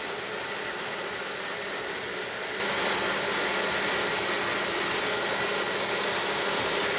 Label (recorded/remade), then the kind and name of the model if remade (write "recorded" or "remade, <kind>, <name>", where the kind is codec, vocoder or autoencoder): recorded